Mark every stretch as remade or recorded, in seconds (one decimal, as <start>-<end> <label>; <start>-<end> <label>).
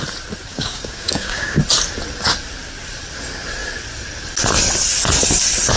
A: 0.0-0.5 recorded; 0.5-1.6 remade; 1.6-5.8 recorded